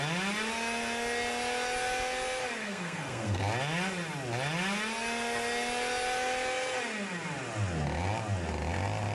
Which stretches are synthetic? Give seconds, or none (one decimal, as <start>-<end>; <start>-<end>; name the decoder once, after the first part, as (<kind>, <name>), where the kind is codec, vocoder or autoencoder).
2.6-3.4 (codec, SNAC)